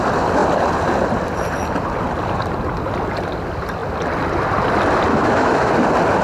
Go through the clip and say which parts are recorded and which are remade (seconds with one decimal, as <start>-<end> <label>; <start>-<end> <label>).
0.0-5.1 recorded; 5.1-5.7 remade; 5.7-6.2 recorded